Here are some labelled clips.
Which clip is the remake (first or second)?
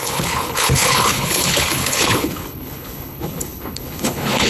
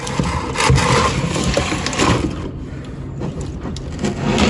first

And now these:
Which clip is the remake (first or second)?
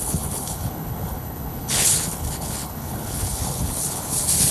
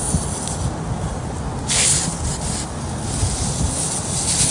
first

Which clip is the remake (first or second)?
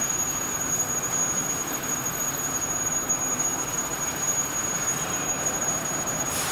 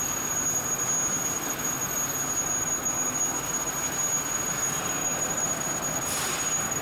first